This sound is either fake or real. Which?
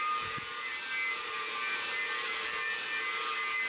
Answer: real